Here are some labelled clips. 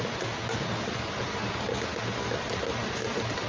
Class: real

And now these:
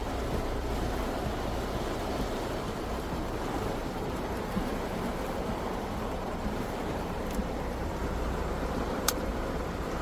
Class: fake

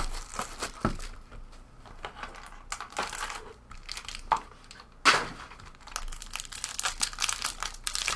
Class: real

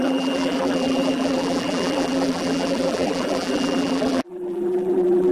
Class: fake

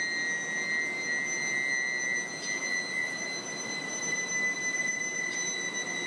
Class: real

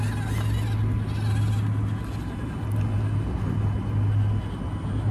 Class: real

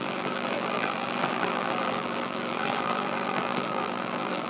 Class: fake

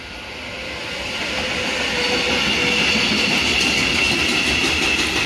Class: real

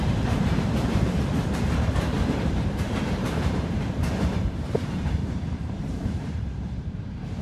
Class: fake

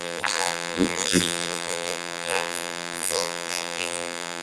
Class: fake